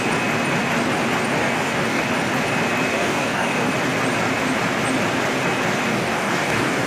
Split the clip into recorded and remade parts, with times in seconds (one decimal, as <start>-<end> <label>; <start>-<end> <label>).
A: 0.0-1.4 recorded; 1.4-2.0 remade; 2.0-2.9 recorded; 2.9-3.7 remade; 3.7-5.9 recorded; 5.9-6.9 remade